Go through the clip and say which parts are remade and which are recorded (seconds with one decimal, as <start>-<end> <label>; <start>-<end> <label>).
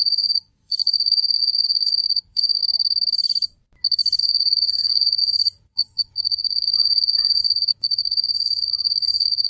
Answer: 0.0-2.6 remade; 2.6-4.2 recorded; 4.2-9.5 remade